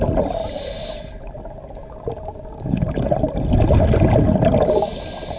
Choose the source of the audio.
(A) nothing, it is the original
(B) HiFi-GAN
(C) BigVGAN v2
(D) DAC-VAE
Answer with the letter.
A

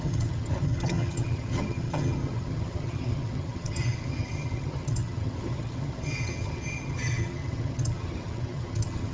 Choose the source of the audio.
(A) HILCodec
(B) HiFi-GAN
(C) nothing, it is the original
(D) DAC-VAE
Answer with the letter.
B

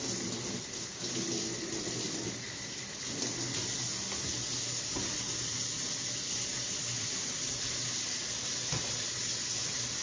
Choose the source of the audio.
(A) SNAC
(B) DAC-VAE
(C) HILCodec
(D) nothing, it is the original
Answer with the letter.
D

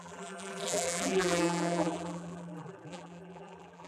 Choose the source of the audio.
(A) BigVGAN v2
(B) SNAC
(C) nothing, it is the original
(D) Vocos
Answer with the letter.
A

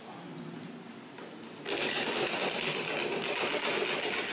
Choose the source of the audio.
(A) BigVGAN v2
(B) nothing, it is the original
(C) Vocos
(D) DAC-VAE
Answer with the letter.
B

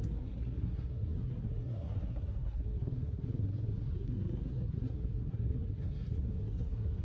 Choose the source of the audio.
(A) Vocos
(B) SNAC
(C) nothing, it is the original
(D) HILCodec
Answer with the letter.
B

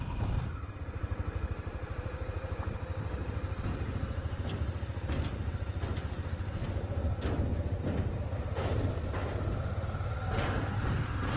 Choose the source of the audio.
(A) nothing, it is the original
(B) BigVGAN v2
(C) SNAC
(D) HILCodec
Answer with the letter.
A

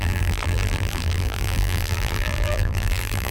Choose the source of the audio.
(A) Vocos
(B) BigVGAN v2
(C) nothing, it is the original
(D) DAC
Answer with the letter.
B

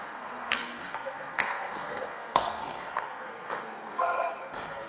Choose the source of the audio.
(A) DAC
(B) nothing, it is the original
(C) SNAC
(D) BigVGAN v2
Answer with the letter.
C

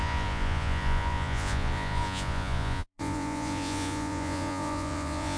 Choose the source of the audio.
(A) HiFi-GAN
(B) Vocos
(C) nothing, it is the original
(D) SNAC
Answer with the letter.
B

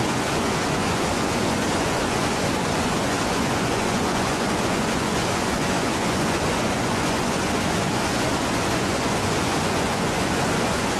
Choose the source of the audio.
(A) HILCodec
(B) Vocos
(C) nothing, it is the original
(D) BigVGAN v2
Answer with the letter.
B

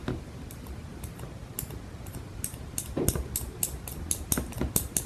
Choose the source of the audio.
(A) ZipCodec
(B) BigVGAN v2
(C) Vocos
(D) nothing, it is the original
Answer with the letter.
D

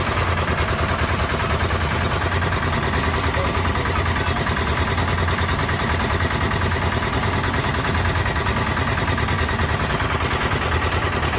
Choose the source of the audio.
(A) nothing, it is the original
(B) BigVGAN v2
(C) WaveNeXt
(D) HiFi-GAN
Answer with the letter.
A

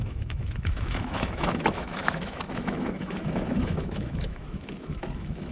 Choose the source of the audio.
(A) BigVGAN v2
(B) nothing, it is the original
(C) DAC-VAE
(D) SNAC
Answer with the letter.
C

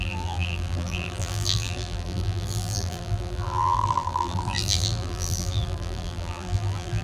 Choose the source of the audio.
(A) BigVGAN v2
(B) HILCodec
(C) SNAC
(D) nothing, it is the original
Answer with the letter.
A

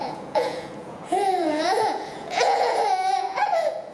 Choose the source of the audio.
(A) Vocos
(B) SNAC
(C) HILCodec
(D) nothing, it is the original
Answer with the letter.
A